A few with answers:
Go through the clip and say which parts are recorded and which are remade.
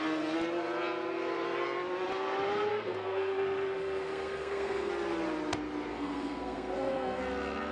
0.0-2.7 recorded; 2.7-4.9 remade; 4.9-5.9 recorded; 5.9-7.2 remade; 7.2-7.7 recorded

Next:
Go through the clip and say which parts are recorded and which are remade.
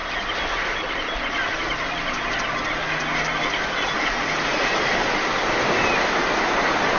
0.0-7.0 recorded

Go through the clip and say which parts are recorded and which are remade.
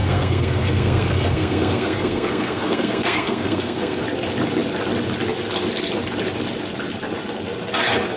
0.0-4.0 remade; 4.0-8.2 recorded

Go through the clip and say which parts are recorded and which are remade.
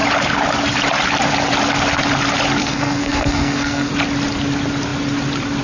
0.0-2.6 recorded; 2.6-3.9 remade; 3.9-5.6 recorded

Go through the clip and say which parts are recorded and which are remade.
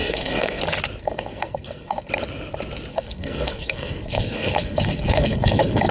0.0-0.6 remade; 0.6-1.0 recorded; 1.0-2.1 remade; 2.1-2.9 recorded; 2.9-5.9 remade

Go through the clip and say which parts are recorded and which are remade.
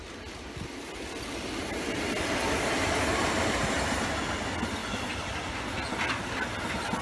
0.0-7.0 recorded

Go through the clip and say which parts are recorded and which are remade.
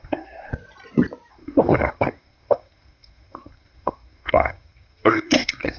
0.0-0.5 remade; 0.5-1.3 recorded; 1.3-5.8 remade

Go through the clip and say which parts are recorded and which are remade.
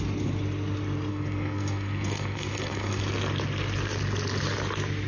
0.0-1.1 recorded; 1.1-3.0 remade; 3.0-5.1 recorded